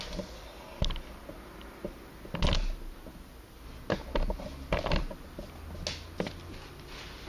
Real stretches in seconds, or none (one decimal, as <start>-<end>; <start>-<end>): 0.0-7.3